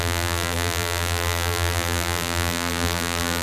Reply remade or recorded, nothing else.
remade